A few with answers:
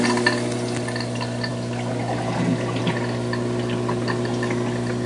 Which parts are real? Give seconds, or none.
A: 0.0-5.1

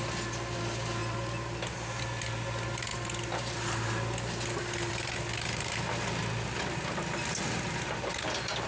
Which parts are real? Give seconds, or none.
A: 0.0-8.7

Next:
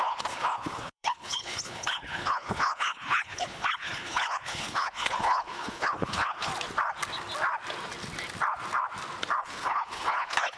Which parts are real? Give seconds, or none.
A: 6.5-9.4

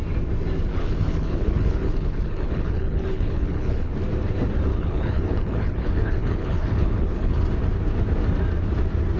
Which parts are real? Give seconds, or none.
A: 0.0-0.7; 3.9-4.7; 7.4-9.2

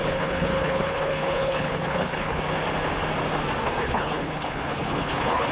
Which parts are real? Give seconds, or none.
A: 2.4-3.8

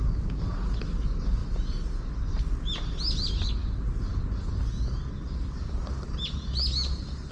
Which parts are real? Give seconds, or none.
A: 0.0-7.3

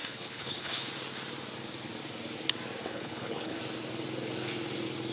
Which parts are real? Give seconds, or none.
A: 0.9-2.8; 3.6-5.1